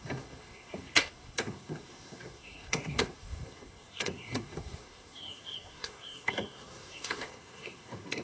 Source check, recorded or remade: remade